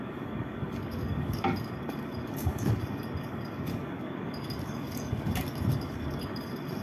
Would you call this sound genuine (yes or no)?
no